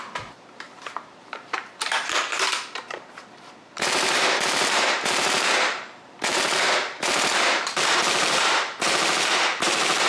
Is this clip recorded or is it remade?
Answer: remade